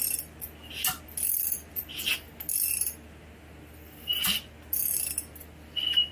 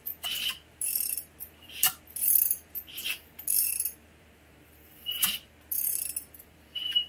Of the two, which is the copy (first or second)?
second